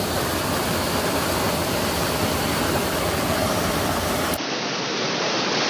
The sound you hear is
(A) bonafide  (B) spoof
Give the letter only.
A